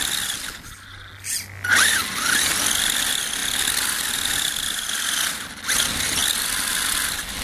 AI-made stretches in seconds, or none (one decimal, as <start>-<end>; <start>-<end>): none